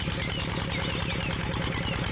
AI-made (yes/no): no